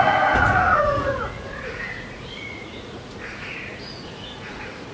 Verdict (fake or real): fake